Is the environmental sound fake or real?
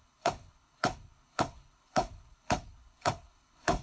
fake